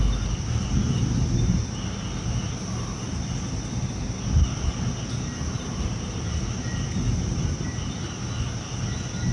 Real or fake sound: real